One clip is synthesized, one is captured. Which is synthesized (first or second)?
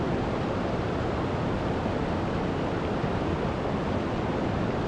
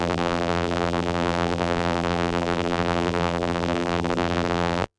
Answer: second